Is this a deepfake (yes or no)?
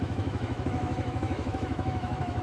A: yes